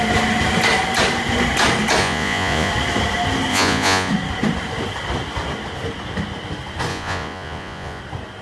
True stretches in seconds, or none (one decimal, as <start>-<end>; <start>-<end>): 0.0-2.0; 2.7-3.5; 4.1-6.9; 8.0-8.4

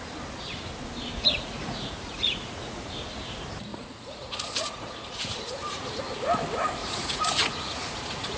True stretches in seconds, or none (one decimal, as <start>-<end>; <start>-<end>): 0.0-1.2; 2.9-3.7; 6.0-6.8

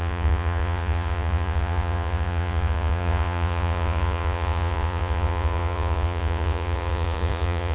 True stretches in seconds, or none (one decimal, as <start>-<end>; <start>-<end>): none

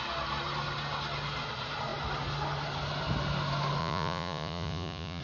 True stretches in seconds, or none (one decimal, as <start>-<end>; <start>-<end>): 0.0-3.8

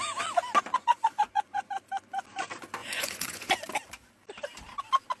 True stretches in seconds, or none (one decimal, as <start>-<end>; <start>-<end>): 0.0-0.7; 1.7-2.8; 3.5-5.2

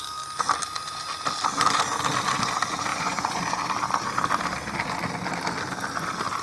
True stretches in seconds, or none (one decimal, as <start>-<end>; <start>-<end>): 0.0-2.9; 3.4-6.4